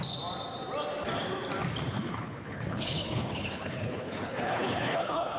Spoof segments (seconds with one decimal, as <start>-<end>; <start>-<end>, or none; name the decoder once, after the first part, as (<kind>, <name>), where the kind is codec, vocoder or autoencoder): 1.9-5.4 (codec, HILCodec)